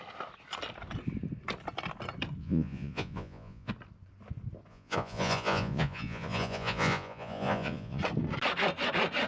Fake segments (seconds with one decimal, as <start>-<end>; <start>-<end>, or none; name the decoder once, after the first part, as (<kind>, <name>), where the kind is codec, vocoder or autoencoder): 2.4-3.7 (vocoder, Vocos); 4.7-8.0